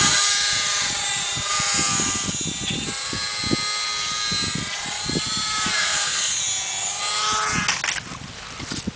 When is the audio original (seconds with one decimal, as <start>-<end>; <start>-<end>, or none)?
0.0-5.8; 6.4-9.0